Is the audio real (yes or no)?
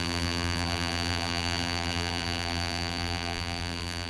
no